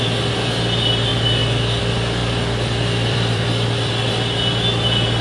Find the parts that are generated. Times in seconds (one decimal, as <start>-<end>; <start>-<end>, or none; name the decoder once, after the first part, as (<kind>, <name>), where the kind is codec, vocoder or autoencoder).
2.2-4.1 (vocoder, BigVGAN v2)